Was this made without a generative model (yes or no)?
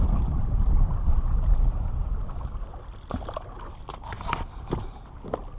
yes